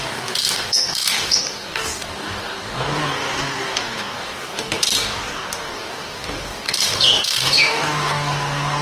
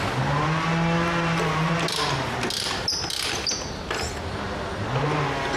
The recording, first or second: second